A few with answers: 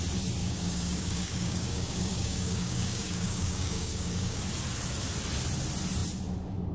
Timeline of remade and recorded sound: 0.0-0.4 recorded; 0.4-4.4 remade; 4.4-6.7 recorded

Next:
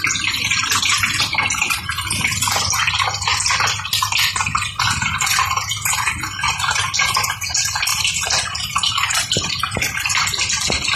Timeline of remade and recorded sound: 0.0-1.3 recorded; 1.3-1.8 remade; 1.8-7.9 recorded; 7.9-9.5 remade; 9.5-11.0 recorded

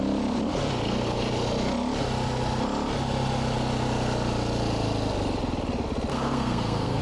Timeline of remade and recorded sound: 0.0-6.1 recorded; 6.1-7.0 remade

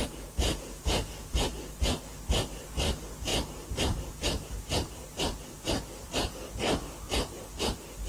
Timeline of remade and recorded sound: 0.0-1.6 remade; 1.6-8.1 recorded

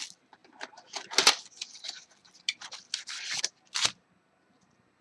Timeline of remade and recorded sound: 0.0-5.0 recorded

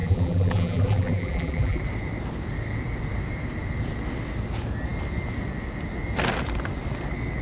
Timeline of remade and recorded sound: 0.0-1.8 remade; 1.8-7.4 recorded

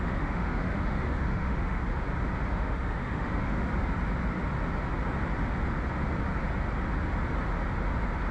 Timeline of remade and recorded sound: 0.0-1.8 remade; 1.8-2.5 recorded; 2.5-3.7 remade; 3.7-8.3 recorded